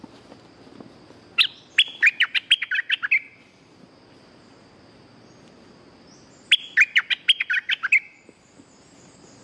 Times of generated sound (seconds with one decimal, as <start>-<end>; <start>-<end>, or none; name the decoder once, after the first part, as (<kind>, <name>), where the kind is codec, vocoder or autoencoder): none